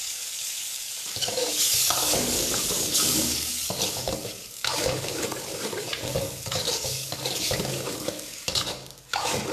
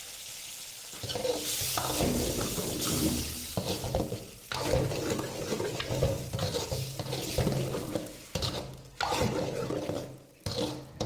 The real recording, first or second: second